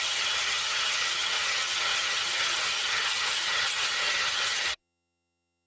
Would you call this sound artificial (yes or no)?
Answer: yes